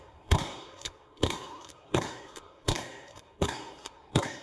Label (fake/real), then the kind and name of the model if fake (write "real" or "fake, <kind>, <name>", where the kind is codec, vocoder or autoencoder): fake, codec, SNAC